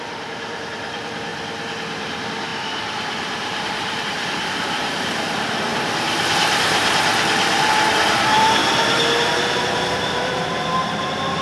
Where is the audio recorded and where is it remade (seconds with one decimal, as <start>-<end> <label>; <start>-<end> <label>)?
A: 0.0-1.3 remade; 1.3-2.0 recorded; 2.0-8.6 remade; 8.6-9.6 recorded; 9.6-11.4 remade